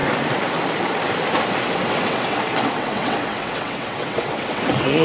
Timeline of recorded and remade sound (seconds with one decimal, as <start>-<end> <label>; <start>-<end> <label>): 0.0-1.8 recorded; 1.8-5.0 remade